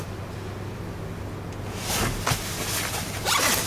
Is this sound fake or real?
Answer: real